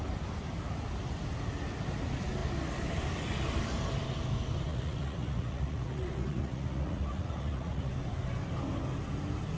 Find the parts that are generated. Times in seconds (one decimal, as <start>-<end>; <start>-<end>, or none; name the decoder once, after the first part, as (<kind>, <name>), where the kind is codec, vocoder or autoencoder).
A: 4.7-7.9 (vocoder, Vocos)